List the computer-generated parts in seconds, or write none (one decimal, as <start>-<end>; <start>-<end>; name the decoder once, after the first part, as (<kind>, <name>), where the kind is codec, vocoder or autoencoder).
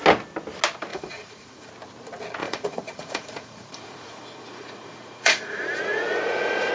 0.9-1.7 (vocoder, Vocos); 2.4-6.7